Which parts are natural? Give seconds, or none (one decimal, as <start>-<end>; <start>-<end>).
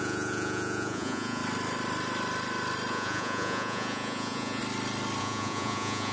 1.4-2.9; 4.6-5.2